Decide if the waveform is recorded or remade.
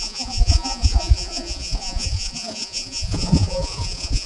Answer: remade